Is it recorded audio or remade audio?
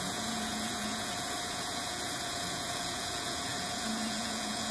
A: remade